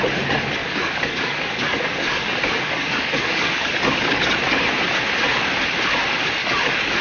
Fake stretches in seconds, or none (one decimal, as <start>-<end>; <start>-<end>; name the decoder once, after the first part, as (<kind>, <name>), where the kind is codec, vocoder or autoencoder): 0.6-4.3 (codec, DAC); 6.4-7.0